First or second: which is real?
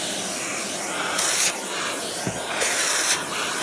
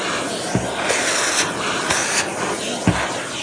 second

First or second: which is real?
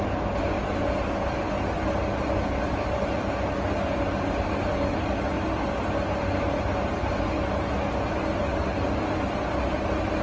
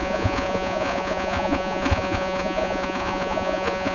first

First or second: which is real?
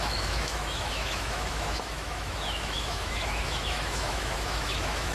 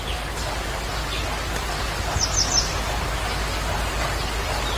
second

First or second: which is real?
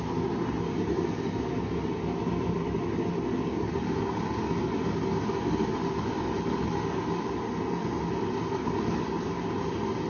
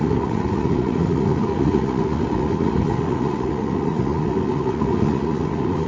first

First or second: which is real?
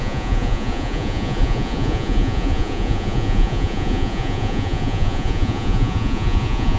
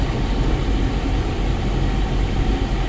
second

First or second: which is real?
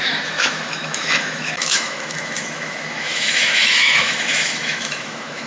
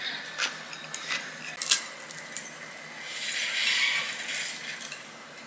second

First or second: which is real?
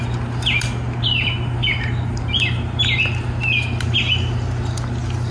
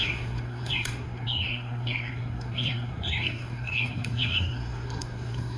first